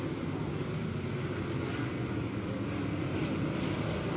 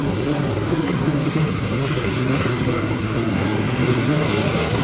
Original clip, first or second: first